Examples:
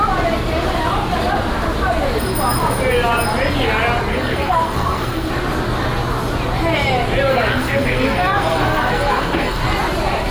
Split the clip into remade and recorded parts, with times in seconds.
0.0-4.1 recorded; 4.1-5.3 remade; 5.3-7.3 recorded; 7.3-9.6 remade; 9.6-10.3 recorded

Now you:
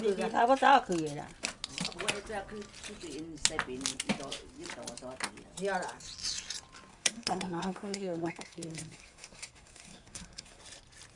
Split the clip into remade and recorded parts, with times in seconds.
0.0-6.9 recorded; 6.9-10.6 remade; 10.6-11.2 recorded

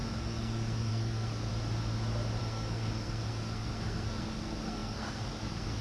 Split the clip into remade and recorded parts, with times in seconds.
0.0-1.5 remade; 1.5-2.4 recorded; 2.4-5.8 remade

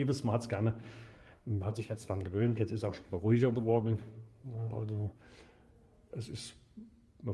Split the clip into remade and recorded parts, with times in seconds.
0.0-0.8 recorded; 0.8-5.2 remade; 5.2-7.3 recorded

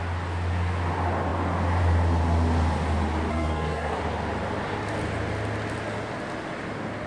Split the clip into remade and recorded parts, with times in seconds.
0.0-3.3 recorded; 3.3-4.0 remade; 4.0-7.1 recorded

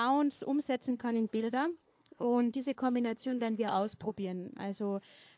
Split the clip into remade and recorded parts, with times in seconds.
0.0-0.9 recorded; 0.9-4.1 remade; 4.1-5.4 recorded